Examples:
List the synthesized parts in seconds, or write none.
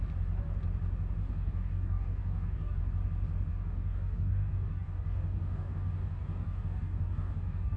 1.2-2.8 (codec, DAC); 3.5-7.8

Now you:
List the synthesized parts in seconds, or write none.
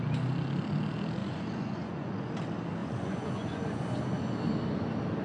1.2-2.3 (vocoder, Vocos); 2.8-4.0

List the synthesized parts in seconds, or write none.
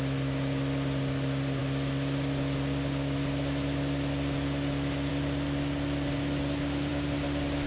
none